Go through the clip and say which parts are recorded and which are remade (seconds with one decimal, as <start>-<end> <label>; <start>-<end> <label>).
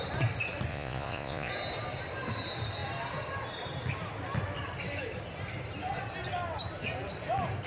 0.0-0.7 recorded; 0.7-1.5 remade; 1.5-7.7 recorded